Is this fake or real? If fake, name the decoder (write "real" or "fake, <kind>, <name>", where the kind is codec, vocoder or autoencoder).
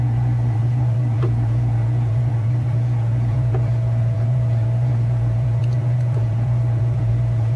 fake, vocoder, Vocos